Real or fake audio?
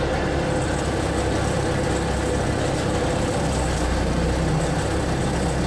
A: real